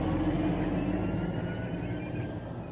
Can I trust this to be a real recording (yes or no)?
yes